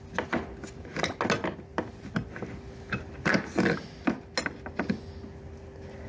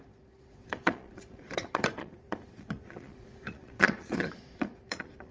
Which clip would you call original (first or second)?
first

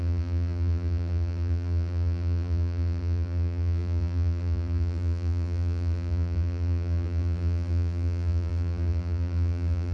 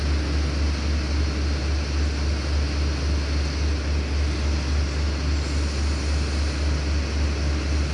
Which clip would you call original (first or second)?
second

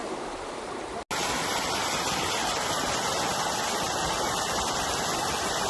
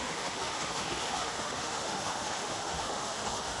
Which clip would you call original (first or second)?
first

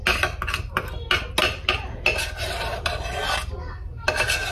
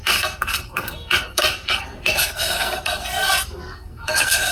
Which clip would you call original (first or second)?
first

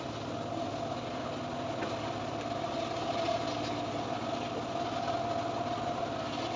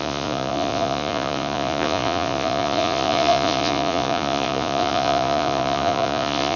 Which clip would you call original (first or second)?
first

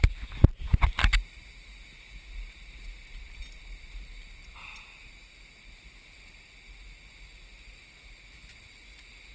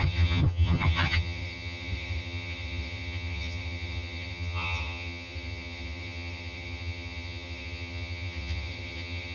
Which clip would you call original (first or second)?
first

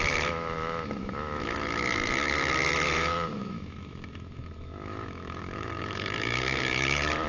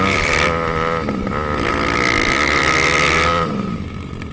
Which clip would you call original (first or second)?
second